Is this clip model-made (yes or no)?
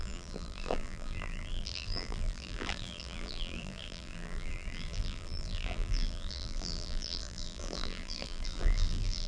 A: yes